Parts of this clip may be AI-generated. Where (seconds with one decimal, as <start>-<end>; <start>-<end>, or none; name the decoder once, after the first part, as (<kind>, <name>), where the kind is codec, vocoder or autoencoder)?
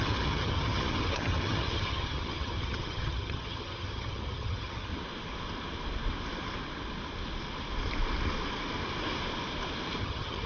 0.0-4.9 (vocoder, HiFi-GAN); 10.0-10.5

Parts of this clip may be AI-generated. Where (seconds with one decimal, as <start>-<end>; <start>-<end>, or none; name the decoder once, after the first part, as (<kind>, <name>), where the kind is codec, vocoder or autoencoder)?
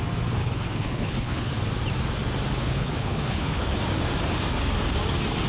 0.4-1.5 (codec, HILCodec); 2.6-3.8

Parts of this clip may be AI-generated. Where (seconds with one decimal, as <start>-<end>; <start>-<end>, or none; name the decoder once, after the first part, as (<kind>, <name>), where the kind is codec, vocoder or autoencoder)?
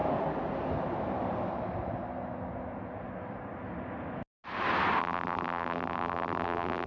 5.0-6.9 (vocoder, BigVGAN v2)